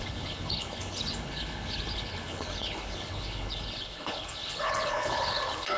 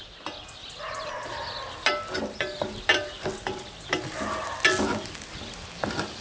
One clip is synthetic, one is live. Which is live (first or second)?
second